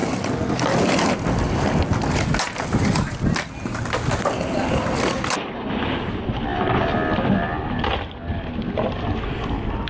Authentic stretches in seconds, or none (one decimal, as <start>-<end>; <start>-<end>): 0.0-9.9